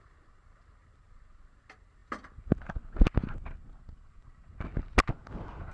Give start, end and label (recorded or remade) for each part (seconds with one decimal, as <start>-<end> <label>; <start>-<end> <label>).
0.0-5.7 recorded